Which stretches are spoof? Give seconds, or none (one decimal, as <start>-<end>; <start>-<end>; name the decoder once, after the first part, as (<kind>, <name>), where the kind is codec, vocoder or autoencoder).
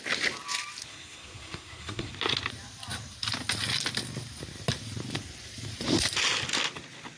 0.9-2.1 (codec, SNAC)